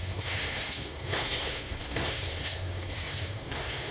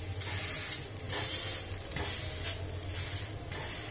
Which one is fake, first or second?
first